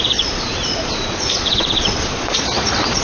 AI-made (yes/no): yes